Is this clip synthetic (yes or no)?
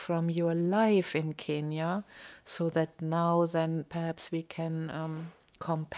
yes